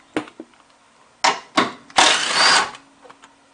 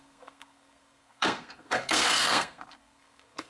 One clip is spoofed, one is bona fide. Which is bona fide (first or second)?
first